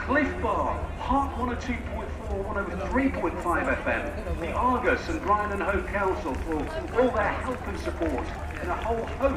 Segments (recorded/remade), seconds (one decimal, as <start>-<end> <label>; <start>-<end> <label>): 0.0-9.4 recorded